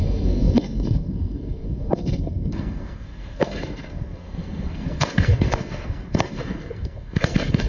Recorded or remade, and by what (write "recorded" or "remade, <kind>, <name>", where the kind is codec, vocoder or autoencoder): remade, codec, SNAC